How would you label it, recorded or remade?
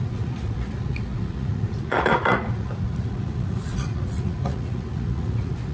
remade